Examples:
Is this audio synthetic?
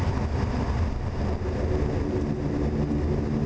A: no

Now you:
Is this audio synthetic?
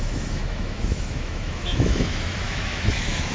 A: yes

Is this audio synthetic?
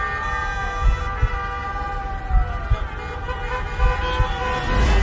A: no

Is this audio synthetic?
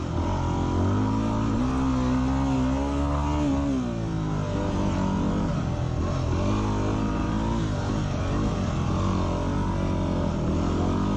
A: no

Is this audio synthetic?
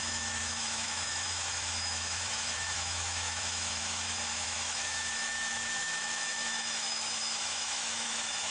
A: yes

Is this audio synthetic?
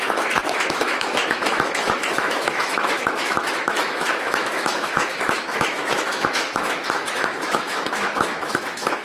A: yes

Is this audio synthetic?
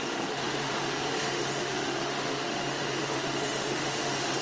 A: yes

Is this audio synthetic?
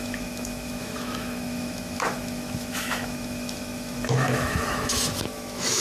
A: yes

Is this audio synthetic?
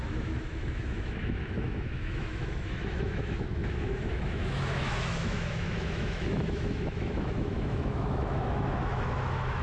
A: yes